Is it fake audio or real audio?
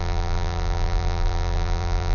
fake